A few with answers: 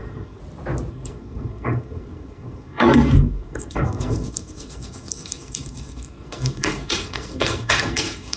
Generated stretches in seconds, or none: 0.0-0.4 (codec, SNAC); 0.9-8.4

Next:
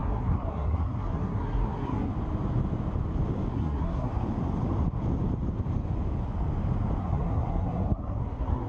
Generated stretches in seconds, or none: 0.0-2.1 (codec, SNAC); 3.5-4.1; 7.0-8.7

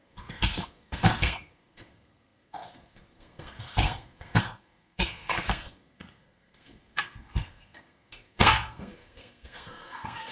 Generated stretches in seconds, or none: 0.0-10.3 (codec, SNAC)

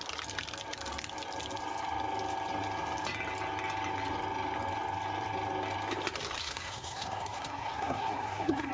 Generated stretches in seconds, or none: 6.4-8.7 (codec, SNAC)

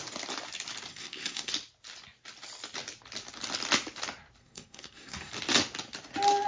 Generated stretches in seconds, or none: 0.9-1.5 (codec, SNAC); 4.4-5.3

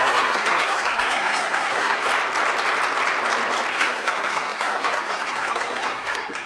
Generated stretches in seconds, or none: 0.0-2.1 (codec, SNAC); 3.7-6.5